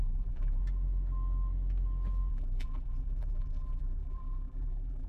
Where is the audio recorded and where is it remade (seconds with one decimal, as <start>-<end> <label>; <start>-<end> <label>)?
0.0-0.6 remade; 0.6-2.3 recorded; 2.3-5.1 remade